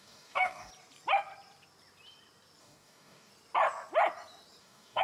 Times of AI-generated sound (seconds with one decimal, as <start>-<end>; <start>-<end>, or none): 0.0-0.7; 2.6-3.3; 4.6-5.0